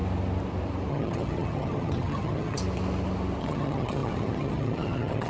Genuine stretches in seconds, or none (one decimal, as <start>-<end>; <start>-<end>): 0.0-0.9; 2.6-3.4